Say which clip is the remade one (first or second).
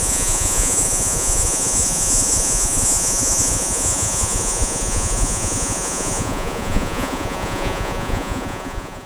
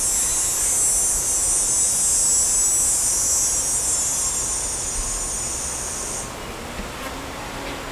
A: first